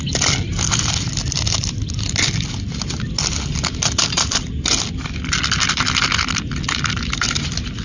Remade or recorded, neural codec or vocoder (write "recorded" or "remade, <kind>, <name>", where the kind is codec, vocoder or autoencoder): recorded